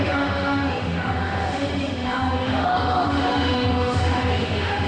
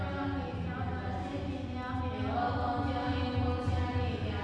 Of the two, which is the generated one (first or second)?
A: first